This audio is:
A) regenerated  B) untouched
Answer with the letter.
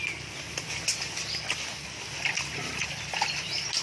B